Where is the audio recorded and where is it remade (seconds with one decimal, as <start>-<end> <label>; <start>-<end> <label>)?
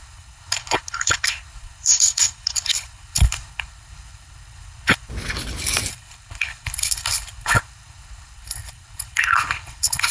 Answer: 0.0-5.1 remade; 5.1-5.9 recorded; 5.9-10.1 remade